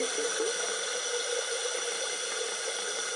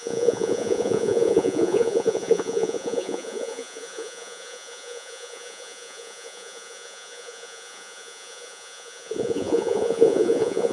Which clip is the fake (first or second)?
second